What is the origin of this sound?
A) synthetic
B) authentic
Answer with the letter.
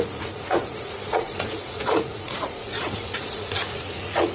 A